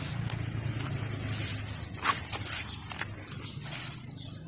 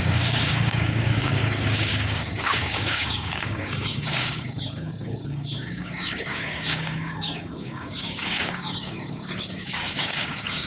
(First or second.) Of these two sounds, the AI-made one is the second